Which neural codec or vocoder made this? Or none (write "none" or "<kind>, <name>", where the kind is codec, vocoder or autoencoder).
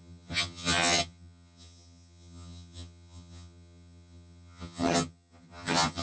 vocoder, HiFi-GAN